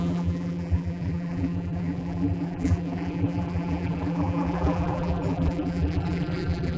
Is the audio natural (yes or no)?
no